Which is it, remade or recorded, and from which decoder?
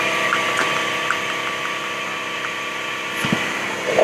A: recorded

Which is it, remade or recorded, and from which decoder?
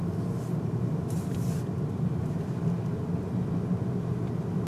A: recorded